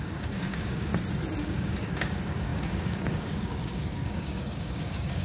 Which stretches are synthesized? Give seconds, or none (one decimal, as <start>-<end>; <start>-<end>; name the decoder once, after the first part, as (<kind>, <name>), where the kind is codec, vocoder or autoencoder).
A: 0.0-0.9 (codec, DAC); 1.4-5.2